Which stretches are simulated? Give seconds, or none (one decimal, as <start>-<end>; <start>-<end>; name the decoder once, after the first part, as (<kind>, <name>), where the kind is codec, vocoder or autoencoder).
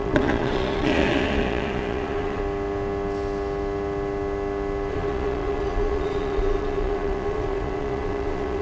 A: 0.0-2.4 (vocoder, Vocos); 4.9-8.6